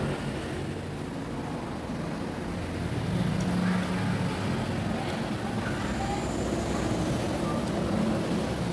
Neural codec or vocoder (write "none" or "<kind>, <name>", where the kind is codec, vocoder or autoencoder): none